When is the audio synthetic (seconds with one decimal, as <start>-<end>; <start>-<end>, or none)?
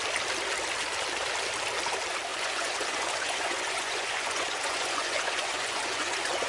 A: 2.3-6.5